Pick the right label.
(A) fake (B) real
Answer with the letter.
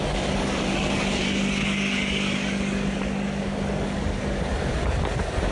A